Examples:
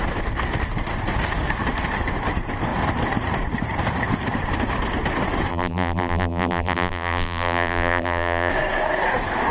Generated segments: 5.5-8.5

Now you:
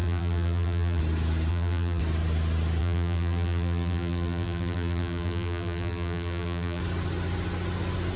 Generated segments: 0.0-1.0; 1.5-2.0; 2.8-6.8

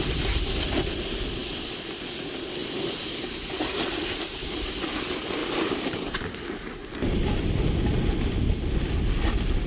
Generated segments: 2.6-3.8; 5.4-7.5

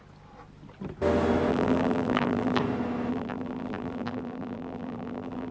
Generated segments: 1.5-2.6; 3.1-5.5

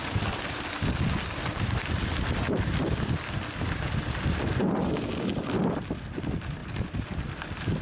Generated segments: 0.0-0.8; 6.6-7.8

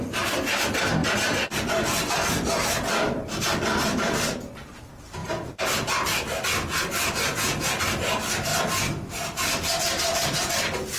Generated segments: 0.0-5.2; 7.8-8.5; 9.1-11.0